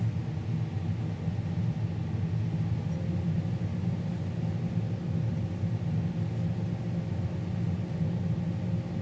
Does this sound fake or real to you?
real